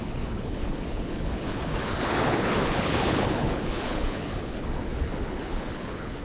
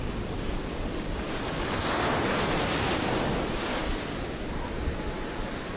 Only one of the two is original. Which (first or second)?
second